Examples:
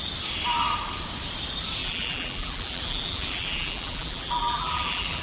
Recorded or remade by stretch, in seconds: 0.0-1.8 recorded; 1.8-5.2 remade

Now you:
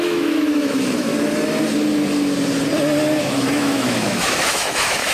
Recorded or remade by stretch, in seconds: 0.0-1.1 remade; 1.1-3.2 recorded; 3.2-5.1 remade

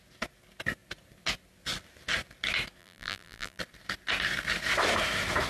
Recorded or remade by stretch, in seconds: 0.0-2.8 recorded; 2.8-3.6 remade; 3.6-5.5 recorded